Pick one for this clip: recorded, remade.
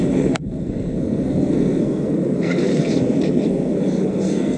remade